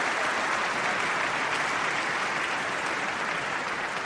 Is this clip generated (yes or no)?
no